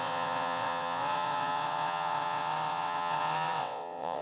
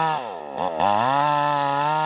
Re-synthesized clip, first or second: first